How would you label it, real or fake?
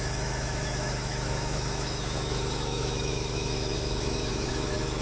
fake